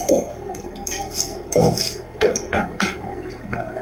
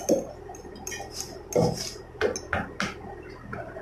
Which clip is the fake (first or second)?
first